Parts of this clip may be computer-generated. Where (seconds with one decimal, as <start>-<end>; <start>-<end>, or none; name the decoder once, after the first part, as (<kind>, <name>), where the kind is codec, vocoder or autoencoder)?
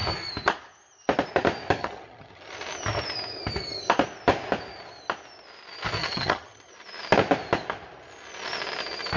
1.8-2.4 (vocoder, HiFi-GAN); 6.0-6.7